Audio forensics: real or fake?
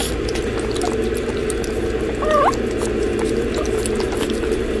real